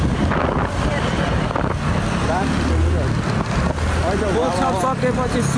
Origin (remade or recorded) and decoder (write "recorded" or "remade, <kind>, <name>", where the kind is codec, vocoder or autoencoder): recorded